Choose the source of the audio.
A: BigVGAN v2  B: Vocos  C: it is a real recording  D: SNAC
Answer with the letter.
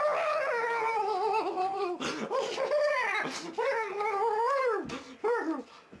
C